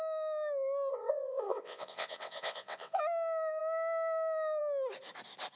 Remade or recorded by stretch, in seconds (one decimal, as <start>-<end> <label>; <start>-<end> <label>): 0.0-0.9 recorded; 0.9-3.0 remade; 3.0-5.6 recorded